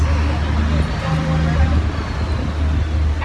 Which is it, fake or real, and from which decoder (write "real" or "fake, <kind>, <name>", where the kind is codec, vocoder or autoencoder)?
real